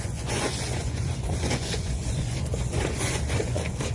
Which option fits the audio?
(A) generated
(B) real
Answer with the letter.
A